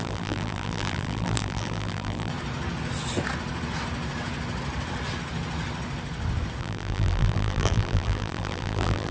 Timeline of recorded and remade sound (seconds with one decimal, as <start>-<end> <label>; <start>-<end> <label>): 0.0-2.3 remade; 2.3-6.6 recorded; 6.6-9.1 remade